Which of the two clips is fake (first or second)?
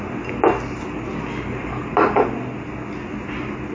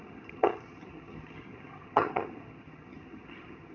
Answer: second